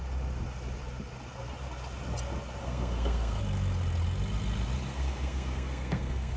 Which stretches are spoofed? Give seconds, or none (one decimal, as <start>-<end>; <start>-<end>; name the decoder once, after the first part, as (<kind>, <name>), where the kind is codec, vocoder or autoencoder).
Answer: 2.6-3.4 (codec, SNAC); 4.9-6.4